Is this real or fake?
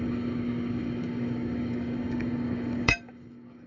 fake